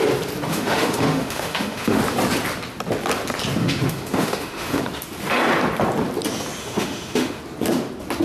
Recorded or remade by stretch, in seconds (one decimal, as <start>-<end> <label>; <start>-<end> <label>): 0.0-0.5 recorded; 0.5-2.0 remade; 2.0-3.6 recorded; 3.6-4.8 remade; 4.8-6.6 recorded; 6.6-7.4 remade; 7.4-8.2 recorded